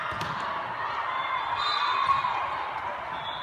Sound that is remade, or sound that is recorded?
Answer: recorded